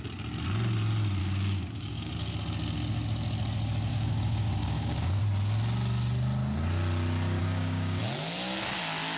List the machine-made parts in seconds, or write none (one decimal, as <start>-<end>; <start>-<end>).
1.2-2.1; 3.9-5.2; 7.4-8.0